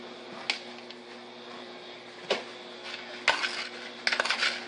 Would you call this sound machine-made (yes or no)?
no